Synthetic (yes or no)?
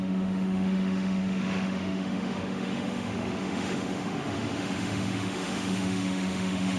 yes